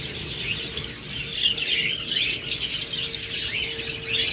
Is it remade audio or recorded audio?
recorded